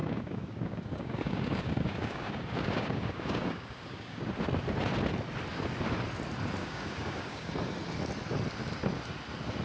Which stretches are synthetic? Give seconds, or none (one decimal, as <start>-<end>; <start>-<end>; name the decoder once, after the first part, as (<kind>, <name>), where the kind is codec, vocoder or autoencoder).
0.0-4.3 (codec, DAC); 6.6-7.5